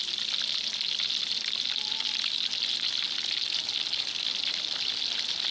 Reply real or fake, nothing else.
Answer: real